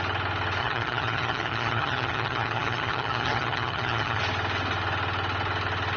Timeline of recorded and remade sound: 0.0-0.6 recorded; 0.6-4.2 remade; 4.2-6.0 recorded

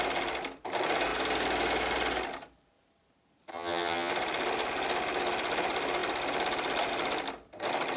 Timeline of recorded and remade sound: 0.0-3.5 recorded; 3.5-4.1 remade; 4.1-8.0 recorded

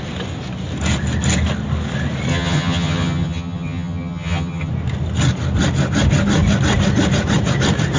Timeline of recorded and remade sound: 0.0-2.3 recorded; 2.3-4.7 remade; 4.7-8.0 recorded

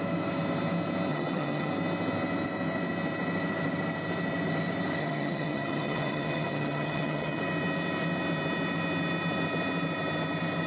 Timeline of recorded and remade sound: 0.0-1.1 recorded; 1.1-1.7 remade; 1.7-5.0 recorded; 5.0-7.4 remade; 7.4-10.7 recorded

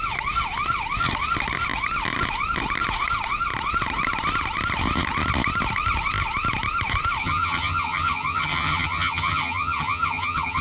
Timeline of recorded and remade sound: 0.0-7.2 recorded; 7.2-10.6 remade

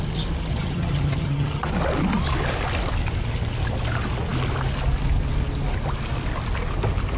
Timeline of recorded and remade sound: 0.0-0.5 recorded; 0.5-1.7 remade; 1.7-7.2 recorded

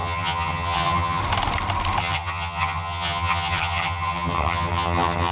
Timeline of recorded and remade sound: 0.0-1.2 remade; 1.2-2.0 recorded; 2.0-5.3 remade